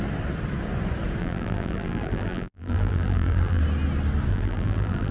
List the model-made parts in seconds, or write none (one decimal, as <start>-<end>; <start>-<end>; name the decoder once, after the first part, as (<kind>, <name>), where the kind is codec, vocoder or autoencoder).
1.2-3.6 (vocoder, BigVGAN v2); 4.3-5.1